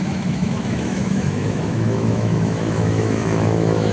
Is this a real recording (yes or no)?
no